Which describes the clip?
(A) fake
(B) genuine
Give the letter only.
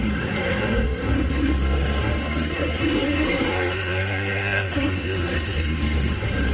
A